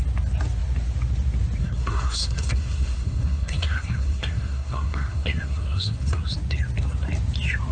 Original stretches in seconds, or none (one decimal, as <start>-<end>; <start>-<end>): 0.0-1.6; 6.2-7.7